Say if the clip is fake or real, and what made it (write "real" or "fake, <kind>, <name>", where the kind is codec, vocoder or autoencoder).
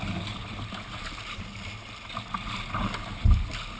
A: real